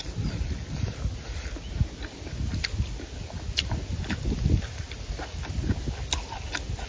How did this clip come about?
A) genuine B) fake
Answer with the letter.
A